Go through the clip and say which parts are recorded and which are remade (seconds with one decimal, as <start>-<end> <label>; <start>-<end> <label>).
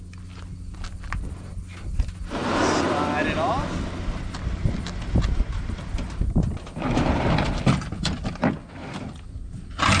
0.0-10.0 recorded